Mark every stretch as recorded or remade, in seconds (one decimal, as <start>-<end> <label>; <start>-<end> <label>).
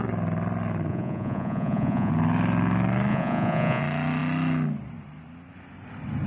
0.0-0.9 recorded; 0.9-2.1 remade; 2.1-3.1 recorded; 3.1-3.8 remade; 3.8-6.3 recorded